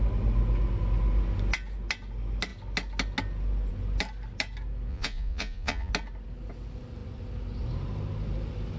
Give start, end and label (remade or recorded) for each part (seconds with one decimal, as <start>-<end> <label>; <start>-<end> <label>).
0.0-4.9 recorded; 4.9-5.9 remade; 5.9-8.8 recorded